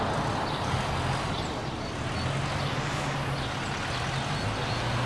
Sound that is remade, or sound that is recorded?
recorded